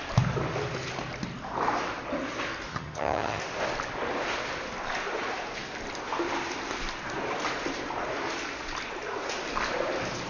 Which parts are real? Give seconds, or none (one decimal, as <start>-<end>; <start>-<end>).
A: 0.0-2.7; 3.4-10.3